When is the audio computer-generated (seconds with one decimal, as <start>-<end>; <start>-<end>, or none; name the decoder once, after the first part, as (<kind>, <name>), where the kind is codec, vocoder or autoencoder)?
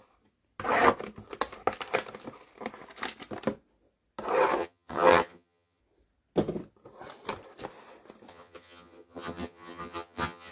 4.6-5.8 (vocoder, HiFi-GAN); 8.3-10.5